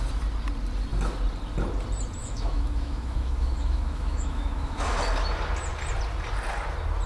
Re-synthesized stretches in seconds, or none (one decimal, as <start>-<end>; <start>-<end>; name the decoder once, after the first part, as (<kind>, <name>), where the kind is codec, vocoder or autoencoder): 2.2-5.0 (autoencoder, DAC-VAE)